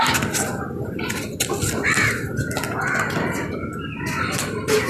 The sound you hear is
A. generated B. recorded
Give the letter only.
B